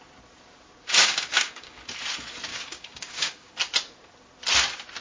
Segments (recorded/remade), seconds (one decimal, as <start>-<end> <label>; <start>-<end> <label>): 0.0-1.0 recorded; 1.0-1.8 remade; 1.8-2.5 recorded; 2.5-3.5 remade; 3.5-5.0 recorded